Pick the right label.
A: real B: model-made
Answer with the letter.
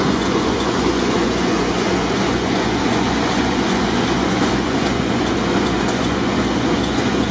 B